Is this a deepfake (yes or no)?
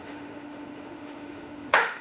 yes